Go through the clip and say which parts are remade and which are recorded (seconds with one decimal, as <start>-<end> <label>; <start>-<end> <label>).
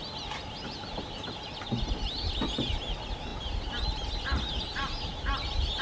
0.0-5.8 recorded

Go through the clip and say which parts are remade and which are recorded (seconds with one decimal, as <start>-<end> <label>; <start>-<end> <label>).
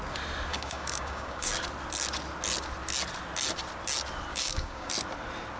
0.0-0.5 recorded; 0.5-1.5 remade; 1.5-4.3 recorded; 4.3-4.9 remade; 4.9-5.6 recorded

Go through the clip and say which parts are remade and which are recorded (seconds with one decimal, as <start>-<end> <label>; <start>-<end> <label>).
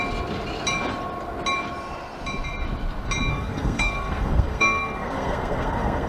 0.0-3.3 recorded; 3.3-6.1 remade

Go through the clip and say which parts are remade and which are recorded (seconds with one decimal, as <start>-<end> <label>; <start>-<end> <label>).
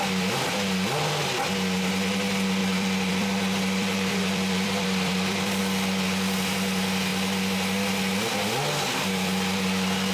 0.0-2.6 recorded; 2.6-5.6 remade; 5.6-10.1 recorded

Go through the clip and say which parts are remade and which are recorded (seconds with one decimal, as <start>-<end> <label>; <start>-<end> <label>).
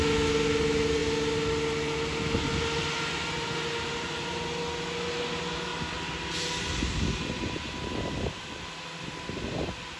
0.0-10.0 recorded